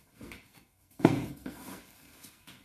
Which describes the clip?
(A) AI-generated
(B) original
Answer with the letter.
A